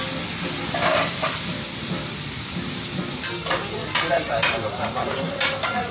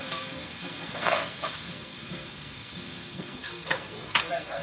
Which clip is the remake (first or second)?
second